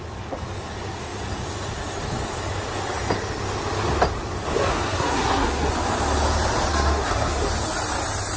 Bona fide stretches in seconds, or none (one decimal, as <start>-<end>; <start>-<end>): 0.0-4.7; 5.7-6.7; 7.5-8.4